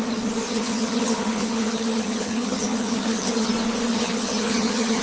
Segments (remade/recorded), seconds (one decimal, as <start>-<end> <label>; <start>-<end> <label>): 0.0-0.5 recorded; 0.5-3.5 remade; 3.5-3.9 recorded; 3.9-5.0 remade